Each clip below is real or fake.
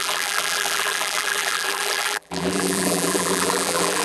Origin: fake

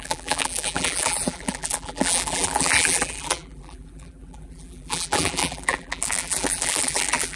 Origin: fake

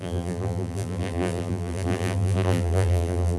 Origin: fake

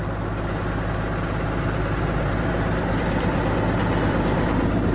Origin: real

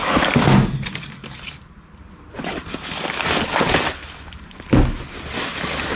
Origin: real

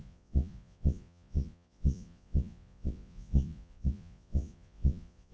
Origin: fake